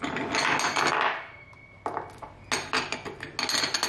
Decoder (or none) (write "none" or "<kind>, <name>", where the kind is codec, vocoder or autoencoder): none